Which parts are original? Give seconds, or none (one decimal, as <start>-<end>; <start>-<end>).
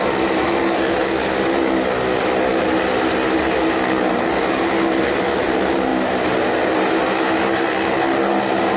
0.0-8.8